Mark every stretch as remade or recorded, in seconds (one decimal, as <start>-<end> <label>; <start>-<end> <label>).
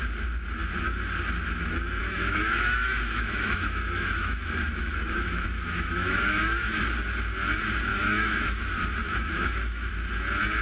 0.0-2.0 recorded; 2.0-6.8 remade; 6.8-7.9 recorded; 7.9-8.6 remade; 8.6-9.0 recorded; 9.0-9.9 remade; 9.9-10.6 recorded